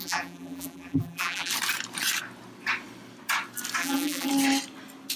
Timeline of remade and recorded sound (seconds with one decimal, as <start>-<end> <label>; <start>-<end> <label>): 0.0-1.5 remade; 1.5-3.8 recorded; 3.8-4.3 remade; 4.3-5.2 recorded